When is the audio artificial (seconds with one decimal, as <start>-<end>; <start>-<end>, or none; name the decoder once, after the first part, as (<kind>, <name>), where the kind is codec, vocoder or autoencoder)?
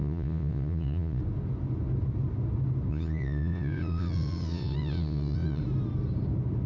0.0-1.2 (vocoder, Vocos); 2.9-5.6